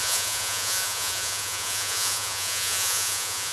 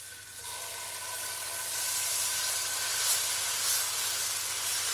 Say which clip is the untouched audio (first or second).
second